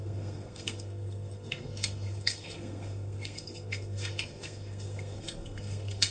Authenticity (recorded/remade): remade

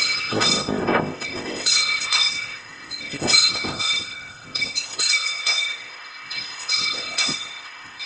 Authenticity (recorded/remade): remade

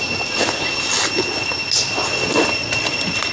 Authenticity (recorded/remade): recorded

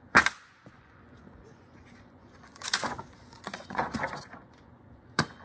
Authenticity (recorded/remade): remade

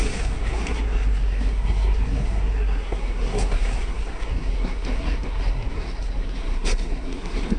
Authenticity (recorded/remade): remade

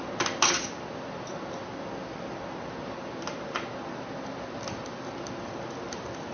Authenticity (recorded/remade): recorded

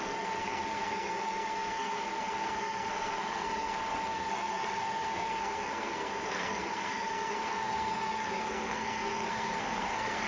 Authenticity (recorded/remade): remade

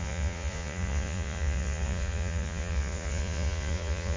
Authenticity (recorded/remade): remade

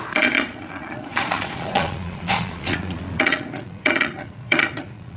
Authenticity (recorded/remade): remade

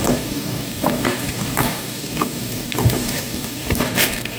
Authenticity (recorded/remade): remade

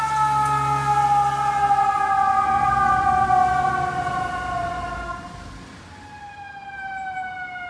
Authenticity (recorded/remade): recorded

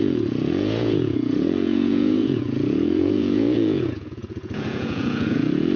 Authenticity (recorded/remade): remade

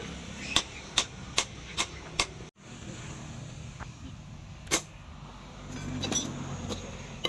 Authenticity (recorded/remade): recorded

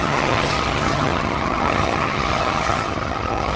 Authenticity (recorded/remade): remade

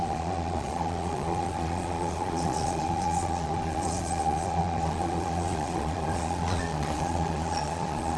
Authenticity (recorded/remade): remade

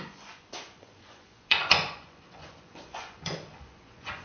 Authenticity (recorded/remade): remade